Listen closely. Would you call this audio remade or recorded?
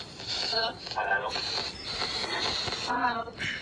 recorded